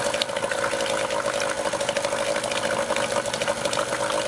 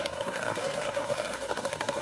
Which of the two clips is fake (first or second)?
second